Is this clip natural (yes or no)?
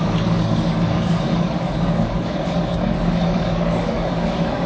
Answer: no